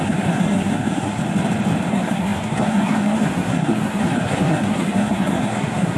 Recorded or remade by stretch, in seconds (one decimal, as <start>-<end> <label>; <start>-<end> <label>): 0.0-1.2 remade; 1.2-1.9 recorded; 1.9-6.0 remade